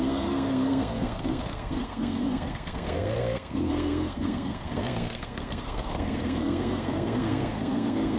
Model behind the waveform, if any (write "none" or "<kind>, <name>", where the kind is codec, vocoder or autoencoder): codec, SNAC